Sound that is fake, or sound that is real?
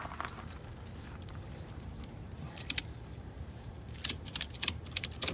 fake